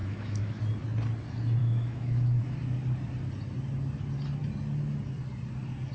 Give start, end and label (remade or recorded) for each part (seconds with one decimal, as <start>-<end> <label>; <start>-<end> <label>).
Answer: 0.0-0.6 remade; 0.6-1.6 recorded; 1.6-2.4 remade; 2.4-5.9 recorded